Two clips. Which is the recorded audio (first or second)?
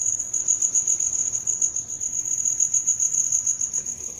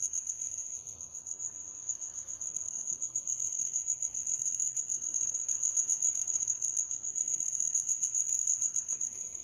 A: first